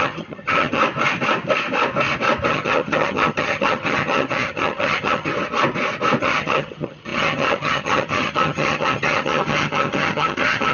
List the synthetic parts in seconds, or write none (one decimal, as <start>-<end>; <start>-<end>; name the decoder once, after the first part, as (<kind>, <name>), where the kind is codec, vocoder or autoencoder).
0.0-0.8 (vocoder, HiFi-GAN); 2.5-5.3; 6.2-10.7